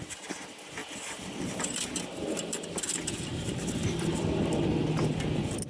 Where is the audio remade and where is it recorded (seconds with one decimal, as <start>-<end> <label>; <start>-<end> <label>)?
0.0-0.8 recorded; 0.8-2.3 remade; 2.3-3.3 recorded; 3.3-4.4 remade; 4.4-5.7 recorded